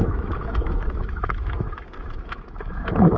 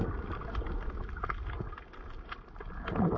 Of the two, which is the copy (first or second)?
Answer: first